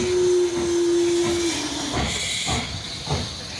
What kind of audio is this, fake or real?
real